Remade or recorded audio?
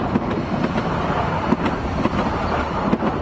recorded